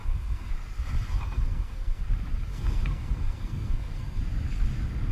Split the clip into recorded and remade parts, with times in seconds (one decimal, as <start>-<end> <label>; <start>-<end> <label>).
0.0-0.5 remade; 0.5-1.1 recorded; 1.1-2.0 remade; 2.0-2.5 recorded; 2.5-4.2 remade; 4.2-5.1 recorded